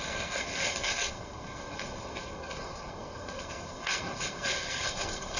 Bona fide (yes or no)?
no